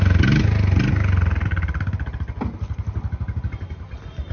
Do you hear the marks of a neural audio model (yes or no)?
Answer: no